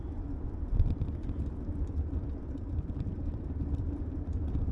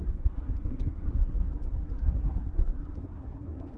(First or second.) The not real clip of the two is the second